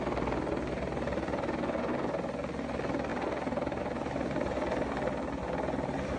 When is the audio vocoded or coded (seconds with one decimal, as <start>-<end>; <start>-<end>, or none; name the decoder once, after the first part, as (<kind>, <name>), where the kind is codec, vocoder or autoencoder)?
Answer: none